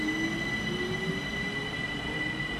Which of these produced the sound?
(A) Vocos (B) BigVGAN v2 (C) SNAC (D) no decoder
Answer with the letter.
D